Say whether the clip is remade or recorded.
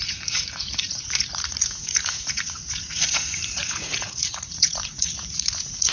remade